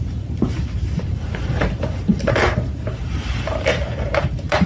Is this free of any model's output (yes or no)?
no